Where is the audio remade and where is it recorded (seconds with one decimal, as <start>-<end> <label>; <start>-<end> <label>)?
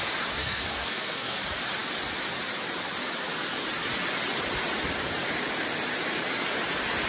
0.0-0.4 recorded; 0.4-1.4 remade; 1.4-7.1 recorded